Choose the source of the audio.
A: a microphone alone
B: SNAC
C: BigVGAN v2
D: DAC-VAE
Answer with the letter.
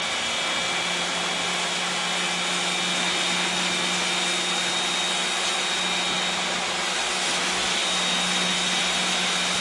A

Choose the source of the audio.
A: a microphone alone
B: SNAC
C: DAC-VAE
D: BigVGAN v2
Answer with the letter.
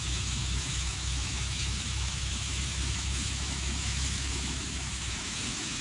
C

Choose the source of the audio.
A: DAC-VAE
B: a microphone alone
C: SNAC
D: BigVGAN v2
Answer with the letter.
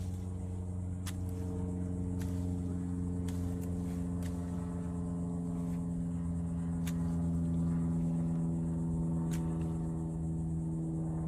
B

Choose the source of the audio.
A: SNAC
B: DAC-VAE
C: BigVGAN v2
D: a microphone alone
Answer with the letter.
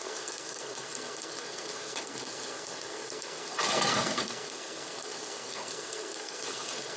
A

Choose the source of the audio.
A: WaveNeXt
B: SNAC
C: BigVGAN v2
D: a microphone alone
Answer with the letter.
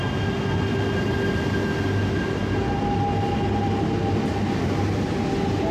D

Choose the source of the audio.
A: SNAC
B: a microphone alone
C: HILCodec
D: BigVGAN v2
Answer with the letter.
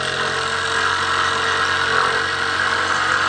B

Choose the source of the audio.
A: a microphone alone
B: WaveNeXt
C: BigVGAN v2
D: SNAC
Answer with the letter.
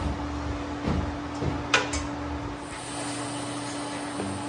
A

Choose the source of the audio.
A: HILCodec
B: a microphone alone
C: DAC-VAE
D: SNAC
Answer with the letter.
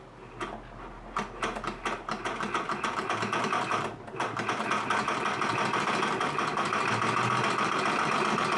B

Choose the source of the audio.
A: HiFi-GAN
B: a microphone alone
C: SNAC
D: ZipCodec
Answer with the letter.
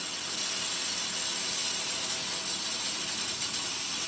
B